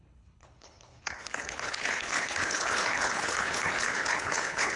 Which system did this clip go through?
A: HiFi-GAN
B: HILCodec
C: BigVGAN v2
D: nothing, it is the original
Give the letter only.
B